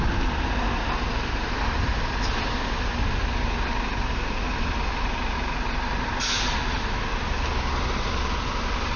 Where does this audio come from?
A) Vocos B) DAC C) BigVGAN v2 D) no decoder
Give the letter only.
D